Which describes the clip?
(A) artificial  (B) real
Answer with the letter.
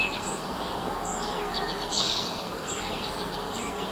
A